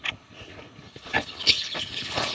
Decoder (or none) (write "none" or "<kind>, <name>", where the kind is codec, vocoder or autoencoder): codec, HILCodec